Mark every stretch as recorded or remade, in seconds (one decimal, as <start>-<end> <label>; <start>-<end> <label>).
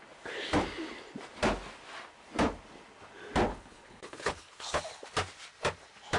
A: 0.0-3.5 recorded; 3.5-4.8 remade; 4.8-6.2 recorded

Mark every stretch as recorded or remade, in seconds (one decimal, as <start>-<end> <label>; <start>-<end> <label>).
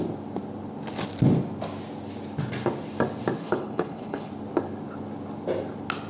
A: 0.0-3.4 recorded; 3.4-4.3 remade; 4.3-6.1 recorded